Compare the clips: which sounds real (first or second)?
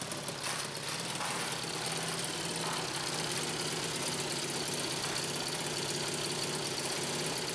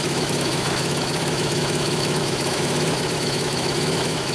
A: first